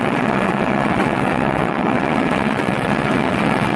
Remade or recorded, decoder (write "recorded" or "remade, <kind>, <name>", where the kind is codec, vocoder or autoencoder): remade, vocoder, WaveNeXt